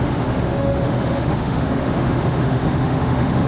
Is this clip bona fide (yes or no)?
no